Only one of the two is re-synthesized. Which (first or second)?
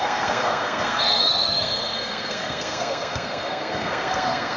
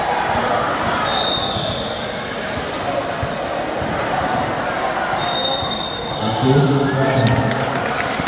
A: first